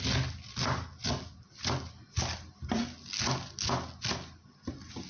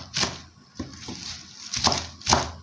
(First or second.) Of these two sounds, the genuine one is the first